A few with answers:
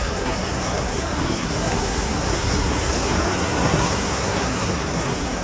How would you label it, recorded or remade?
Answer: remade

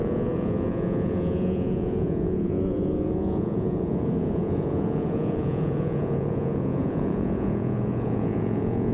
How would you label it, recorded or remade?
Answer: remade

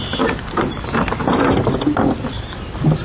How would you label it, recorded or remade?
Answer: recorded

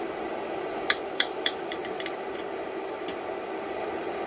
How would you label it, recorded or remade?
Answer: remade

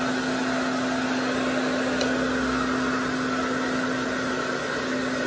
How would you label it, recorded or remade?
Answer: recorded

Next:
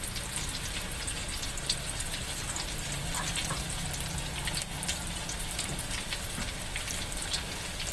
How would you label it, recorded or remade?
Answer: recorded